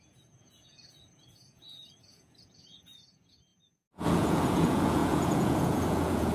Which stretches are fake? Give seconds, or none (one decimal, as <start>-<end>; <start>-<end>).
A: 0.0-6.3

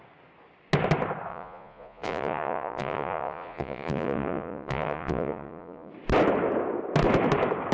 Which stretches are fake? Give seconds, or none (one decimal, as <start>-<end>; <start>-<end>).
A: 1.3-5.9

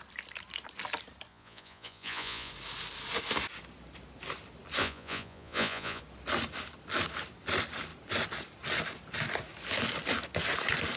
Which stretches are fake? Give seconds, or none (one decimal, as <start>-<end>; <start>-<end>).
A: 1.3-2.5; 4.8-6.0

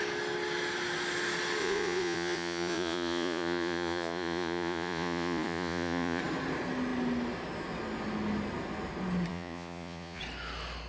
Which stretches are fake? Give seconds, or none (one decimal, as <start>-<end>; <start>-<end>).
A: 1.6-6.2; 9.3-10.2

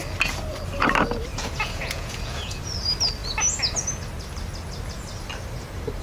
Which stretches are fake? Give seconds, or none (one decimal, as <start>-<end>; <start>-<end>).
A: 1.3-2.6

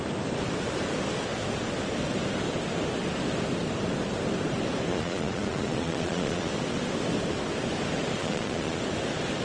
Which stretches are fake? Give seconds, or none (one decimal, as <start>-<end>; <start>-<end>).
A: 4.9-6.5; 8.2-8.8

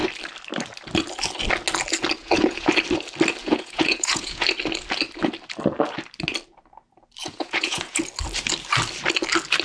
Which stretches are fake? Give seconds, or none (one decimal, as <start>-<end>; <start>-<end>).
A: 2.2-2.7; 3.4-4.4; 7.2-8.0

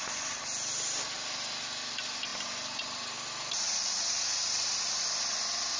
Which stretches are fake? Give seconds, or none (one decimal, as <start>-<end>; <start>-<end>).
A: none